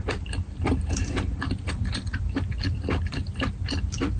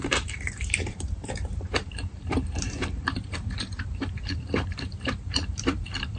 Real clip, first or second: first